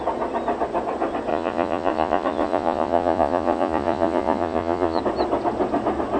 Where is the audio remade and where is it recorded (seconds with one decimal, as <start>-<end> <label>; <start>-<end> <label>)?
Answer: 0.0-1.3 recorded; 1.3-5.0 remade; 5.0-6.2 recorded